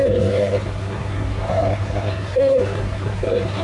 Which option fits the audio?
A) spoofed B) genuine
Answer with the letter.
A